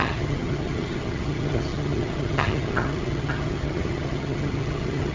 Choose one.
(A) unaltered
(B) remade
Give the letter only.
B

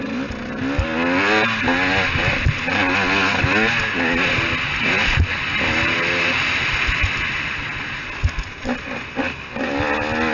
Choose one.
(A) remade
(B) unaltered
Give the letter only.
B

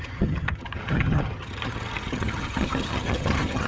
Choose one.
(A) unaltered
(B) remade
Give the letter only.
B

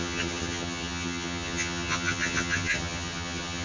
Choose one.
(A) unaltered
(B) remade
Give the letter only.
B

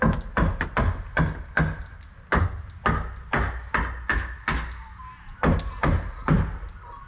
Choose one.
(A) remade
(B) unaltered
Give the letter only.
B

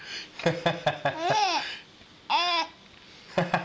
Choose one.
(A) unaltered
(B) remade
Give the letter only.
A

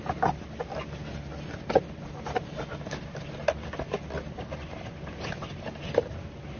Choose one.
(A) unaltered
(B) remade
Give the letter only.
A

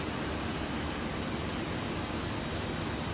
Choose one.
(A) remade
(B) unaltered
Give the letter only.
B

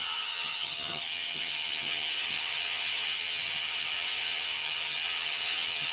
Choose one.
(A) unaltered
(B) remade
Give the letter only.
B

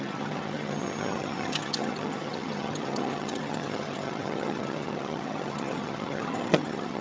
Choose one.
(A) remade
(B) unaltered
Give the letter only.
A